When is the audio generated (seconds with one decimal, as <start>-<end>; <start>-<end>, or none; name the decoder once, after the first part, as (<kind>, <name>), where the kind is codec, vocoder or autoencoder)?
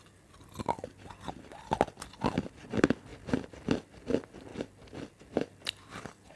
none